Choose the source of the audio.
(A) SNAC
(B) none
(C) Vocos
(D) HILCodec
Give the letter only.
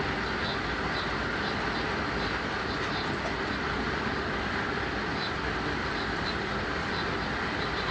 B